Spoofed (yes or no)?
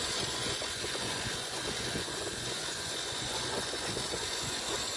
yes